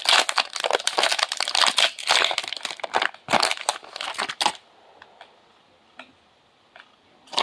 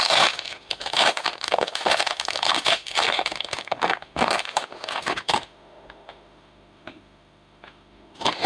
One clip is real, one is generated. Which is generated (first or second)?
second